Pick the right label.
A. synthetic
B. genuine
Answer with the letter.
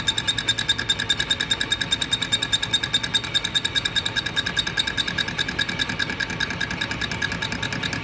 B